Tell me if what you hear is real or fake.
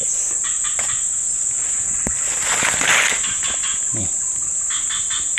real